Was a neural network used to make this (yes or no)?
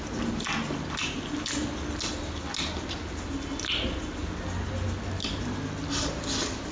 no